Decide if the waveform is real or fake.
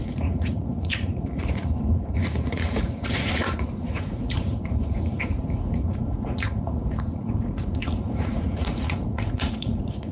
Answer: fake